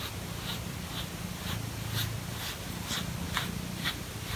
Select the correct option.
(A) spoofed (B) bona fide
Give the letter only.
B